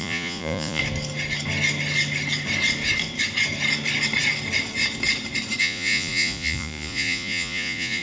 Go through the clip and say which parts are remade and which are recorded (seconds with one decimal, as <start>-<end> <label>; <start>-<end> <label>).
0.0-0.8 remade; 0.8-5.6 recorded; 5.6-8.0 remade